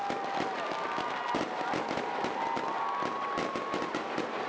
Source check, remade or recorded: recorded